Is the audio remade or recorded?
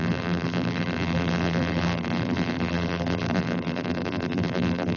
remade